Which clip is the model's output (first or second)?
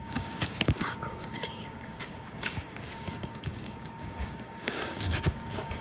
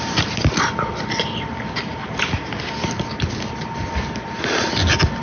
first